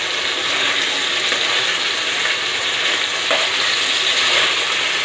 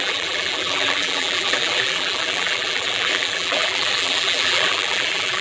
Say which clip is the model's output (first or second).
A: second